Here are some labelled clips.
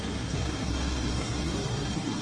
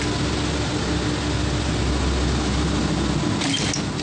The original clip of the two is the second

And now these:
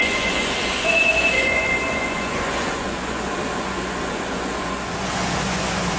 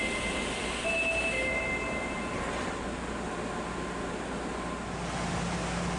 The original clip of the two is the second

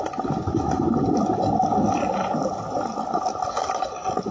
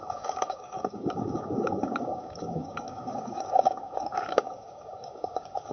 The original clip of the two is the first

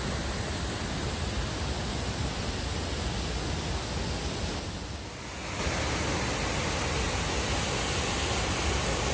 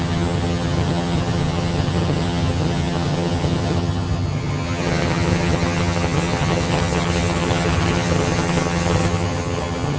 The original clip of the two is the first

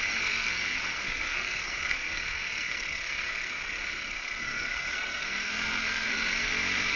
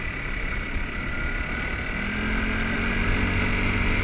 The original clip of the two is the second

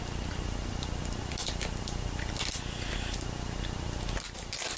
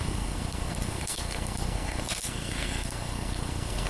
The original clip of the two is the first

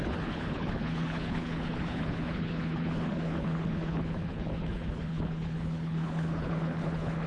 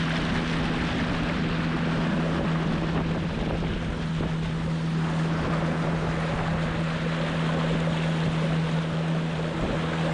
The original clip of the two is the second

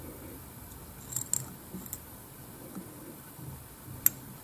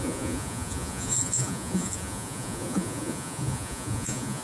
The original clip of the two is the first